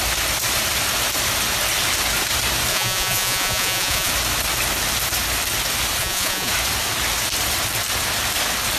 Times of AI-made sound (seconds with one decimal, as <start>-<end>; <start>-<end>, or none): 2.7-4.1; 6.0-6.5